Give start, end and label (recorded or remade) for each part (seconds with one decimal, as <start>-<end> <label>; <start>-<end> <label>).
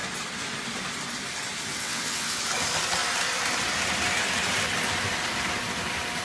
0.0-1.7 recorded; 1.7-2.4 remade; 2.4-6.2 recorded